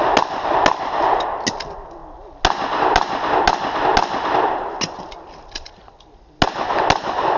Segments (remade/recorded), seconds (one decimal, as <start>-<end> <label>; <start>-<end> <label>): 0.0-7.4 recorded